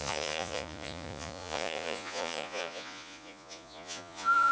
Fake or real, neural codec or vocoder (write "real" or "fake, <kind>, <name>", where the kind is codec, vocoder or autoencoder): fake, vocoder, Vocos